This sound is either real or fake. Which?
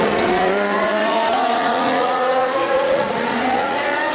fake